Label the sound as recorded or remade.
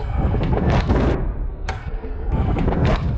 remade